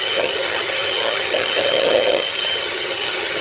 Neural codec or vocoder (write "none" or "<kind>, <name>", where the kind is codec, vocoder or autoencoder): vocoder, HiFi-GAN